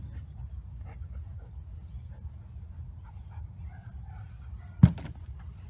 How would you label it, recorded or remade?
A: recorded